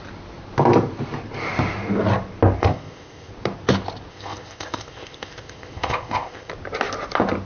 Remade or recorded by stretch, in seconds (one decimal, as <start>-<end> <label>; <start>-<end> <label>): 0.0-2.6 recorded; 2.6-3.3 remade; 3.3-4.1 recorded; 4.1-6.5 remade; 6.5-7.5 recorded